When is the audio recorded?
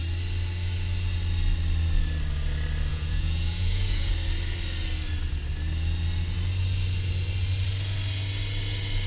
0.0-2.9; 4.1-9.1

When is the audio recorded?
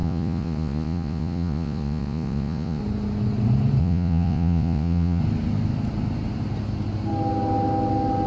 2.8-3.8; 5.2-8.3